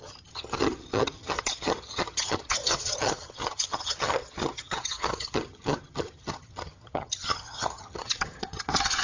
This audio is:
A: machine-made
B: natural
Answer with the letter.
A